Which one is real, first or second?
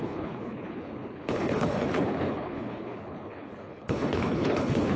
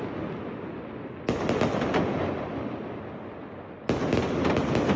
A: second